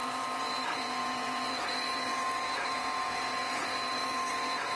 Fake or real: fake